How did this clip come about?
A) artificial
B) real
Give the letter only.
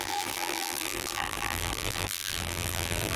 A